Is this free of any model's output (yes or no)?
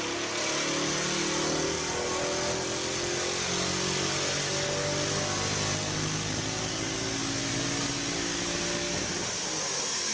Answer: yes